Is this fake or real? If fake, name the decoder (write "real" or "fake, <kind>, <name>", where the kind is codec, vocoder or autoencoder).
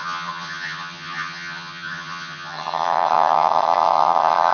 fake, vocoder, HiFi-GAN